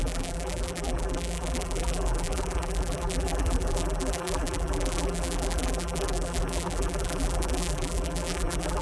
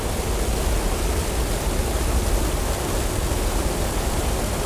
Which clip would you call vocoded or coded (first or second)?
first